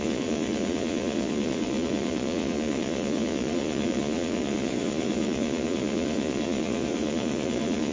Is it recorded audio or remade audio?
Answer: remade